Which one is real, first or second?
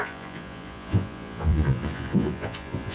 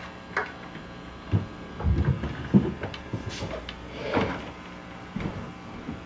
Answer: second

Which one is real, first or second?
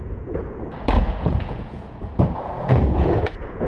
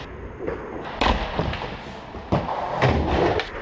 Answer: second